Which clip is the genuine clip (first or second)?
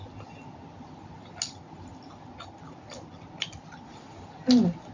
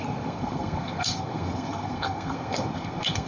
first